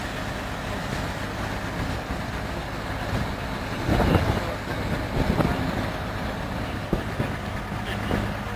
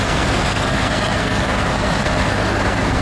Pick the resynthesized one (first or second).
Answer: second